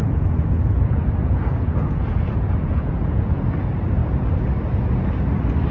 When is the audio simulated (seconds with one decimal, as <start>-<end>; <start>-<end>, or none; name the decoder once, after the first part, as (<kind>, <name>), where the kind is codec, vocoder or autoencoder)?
0.0-3.4 (vocoder, Vocos)